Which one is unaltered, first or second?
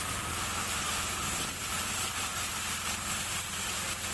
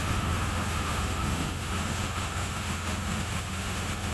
first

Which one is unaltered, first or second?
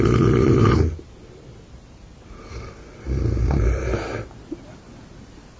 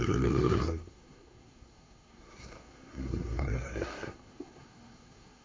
first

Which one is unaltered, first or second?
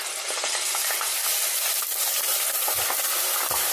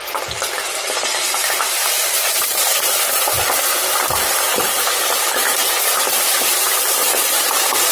first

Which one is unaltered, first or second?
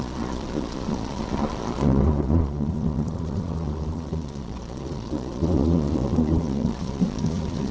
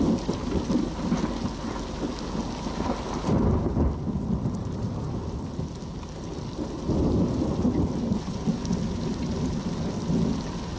second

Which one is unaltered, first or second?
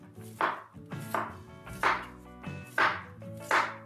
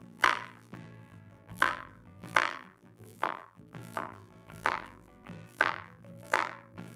first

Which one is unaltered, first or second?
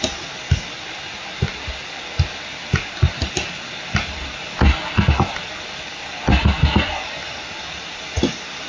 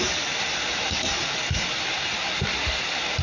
first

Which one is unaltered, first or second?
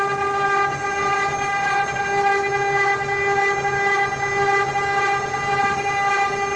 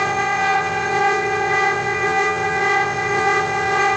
first